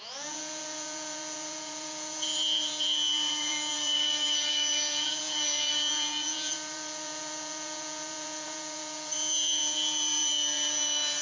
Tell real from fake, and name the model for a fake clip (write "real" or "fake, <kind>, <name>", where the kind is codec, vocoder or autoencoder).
fake, vocoder, Vocos